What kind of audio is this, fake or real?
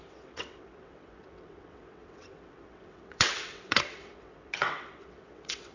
fake